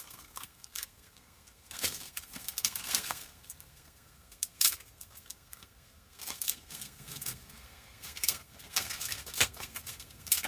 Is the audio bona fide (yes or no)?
no